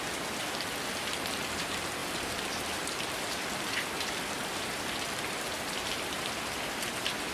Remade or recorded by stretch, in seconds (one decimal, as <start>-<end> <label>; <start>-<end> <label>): 0.0-7.3 recorded